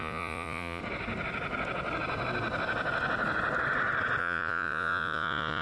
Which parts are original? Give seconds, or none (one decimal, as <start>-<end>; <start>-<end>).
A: 0.8-4.2